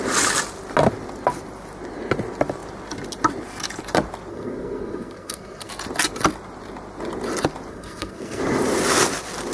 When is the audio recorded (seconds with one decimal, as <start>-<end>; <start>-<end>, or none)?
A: 0.0-4.3; 5.7-7.7; 8.4-9.5